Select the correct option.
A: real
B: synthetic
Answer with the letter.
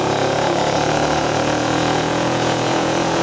B